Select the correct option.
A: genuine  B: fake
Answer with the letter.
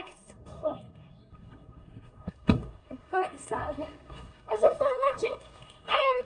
B